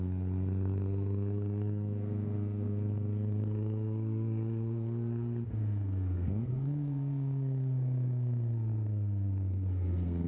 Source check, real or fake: fake